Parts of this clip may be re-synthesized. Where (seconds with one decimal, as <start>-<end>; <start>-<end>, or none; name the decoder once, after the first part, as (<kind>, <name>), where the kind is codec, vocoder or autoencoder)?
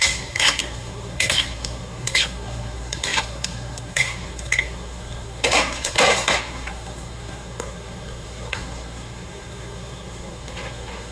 0.0-11.1 (codec, SNAC)